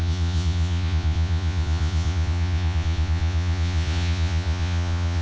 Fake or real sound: fake